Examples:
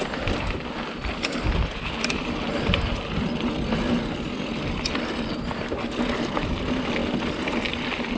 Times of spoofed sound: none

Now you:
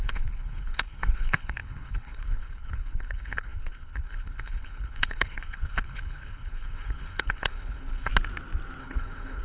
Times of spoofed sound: 0.0-8.1 (codec, HILCodec); 8.8-9.4

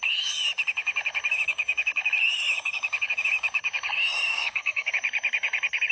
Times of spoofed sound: 4.3-4.9 (codec, SNAC)